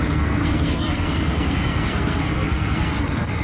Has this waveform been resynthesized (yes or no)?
yes